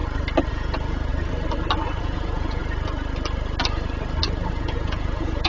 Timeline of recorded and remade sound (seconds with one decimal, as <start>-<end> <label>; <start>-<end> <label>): 0.0-0.5 recorded; 0.5-1.1 remade; 1.1-2.0 recorded; 2.0-2.6 remade; 2.6-4.5 recorded; 4.5-5.5 remade